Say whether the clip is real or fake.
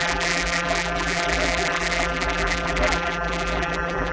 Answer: fake